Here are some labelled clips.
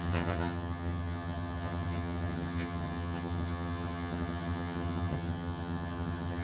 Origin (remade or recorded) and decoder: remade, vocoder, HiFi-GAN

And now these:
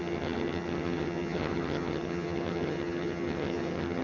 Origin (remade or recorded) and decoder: remade, vocoder, HiFi-GAN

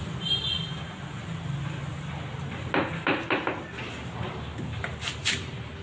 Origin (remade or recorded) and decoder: recorded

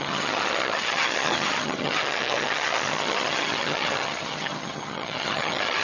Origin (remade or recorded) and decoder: remade, vocoder, HiFi-GAN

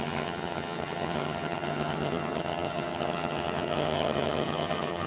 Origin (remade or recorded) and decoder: remade, vocoder, HiFi-GAN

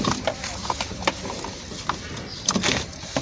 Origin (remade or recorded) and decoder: recorded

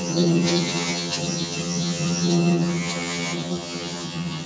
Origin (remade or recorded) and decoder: remade, vocoder, HiFi-GAN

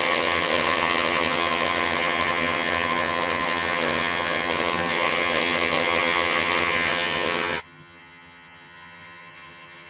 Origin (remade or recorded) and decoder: remade, vocoder, HiFi-GAN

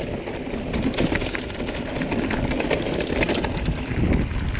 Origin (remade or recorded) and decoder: recorded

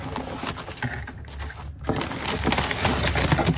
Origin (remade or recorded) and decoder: recorded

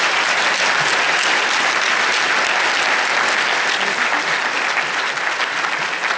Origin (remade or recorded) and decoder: recorded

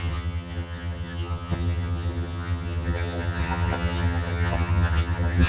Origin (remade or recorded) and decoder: remade, vocoder, HiFi-GAN